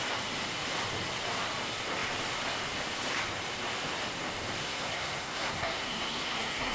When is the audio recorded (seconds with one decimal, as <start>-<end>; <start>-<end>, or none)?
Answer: 0.0-4.6